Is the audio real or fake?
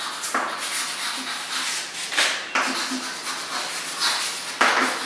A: real